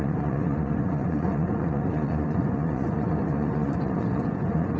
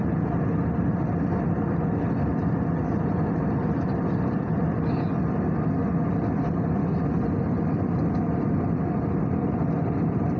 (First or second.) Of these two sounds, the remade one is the first